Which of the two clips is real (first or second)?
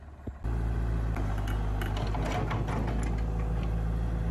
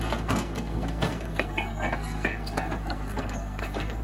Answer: first